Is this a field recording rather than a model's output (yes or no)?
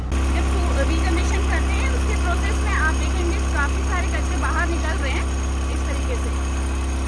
yes